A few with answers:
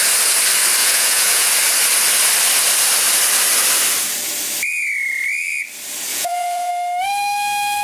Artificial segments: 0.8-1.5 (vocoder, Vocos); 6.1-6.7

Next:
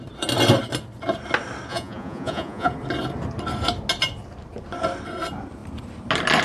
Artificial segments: 1.7-2.7 (vocoder, Vocos)

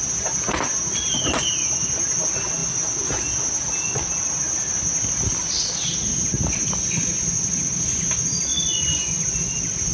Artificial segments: 8.5-9.2 (vocoder, Vocos)

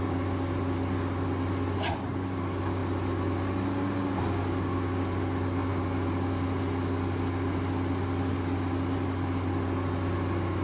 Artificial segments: none

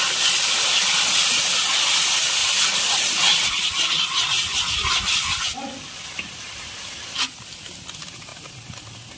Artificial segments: none

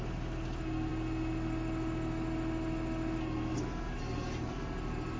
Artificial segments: none

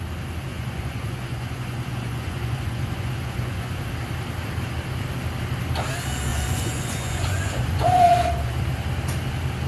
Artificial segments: 0.5-3.8 (vocoder, Vocos); 6.3-8.6